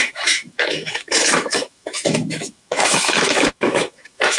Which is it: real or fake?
fake